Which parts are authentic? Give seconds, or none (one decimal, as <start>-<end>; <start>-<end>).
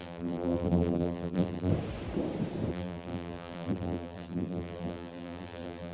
1.7-2.7